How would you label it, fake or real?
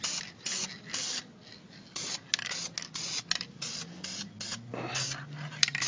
real